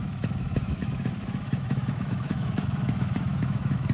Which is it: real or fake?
fake